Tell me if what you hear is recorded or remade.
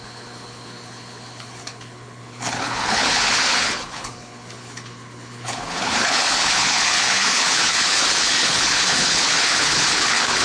remade